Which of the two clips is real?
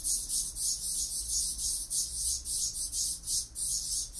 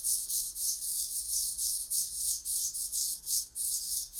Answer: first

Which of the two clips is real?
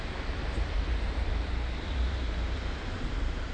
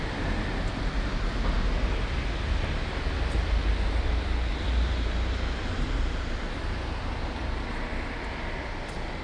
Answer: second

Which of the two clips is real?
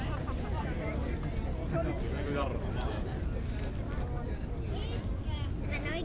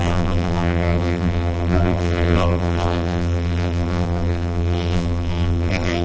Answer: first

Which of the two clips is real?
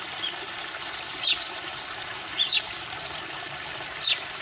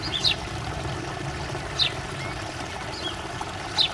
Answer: second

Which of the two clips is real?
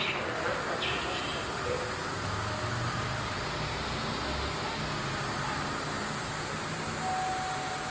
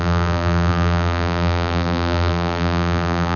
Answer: first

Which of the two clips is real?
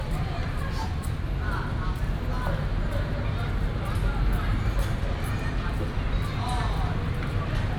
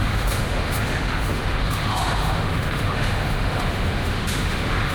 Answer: first